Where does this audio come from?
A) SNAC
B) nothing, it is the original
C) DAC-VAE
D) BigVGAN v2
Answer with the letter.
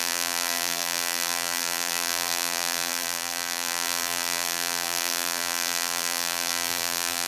D